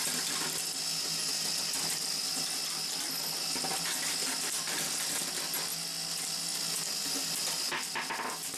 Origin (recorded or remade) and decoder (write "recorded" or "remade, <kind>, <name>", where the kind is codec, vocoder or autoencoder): recorded